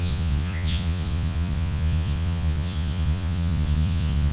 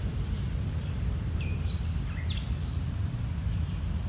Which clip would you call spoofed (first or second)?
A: first